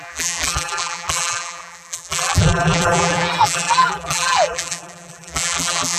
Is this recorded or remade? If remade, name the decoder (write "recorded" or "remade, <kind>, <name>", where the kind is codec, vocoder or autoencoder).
remade, vocoder, BigVGAN v2